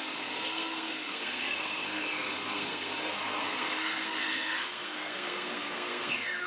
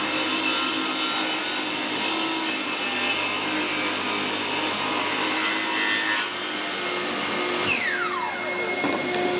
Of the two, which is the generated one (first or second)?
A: first